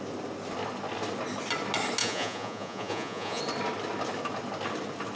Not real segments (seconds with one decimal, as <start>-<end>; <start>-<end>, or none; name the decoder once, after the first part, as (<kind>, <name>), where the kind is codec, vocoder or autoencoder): 2.0-3.4 (vocoder, Vocos)